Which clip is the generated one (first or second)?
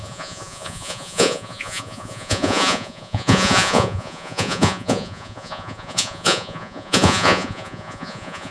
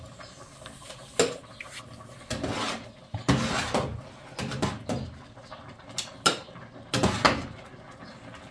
first